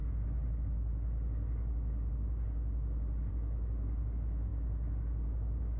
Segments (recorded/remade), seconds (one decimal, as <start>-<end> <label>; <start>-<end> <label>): 0.0-5.8 recorded